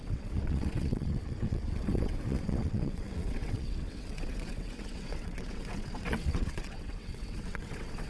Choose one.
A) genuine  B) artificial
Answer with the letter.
B